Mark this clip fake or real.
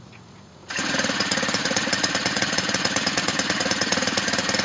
fake